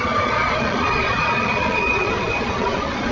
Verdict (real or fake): fake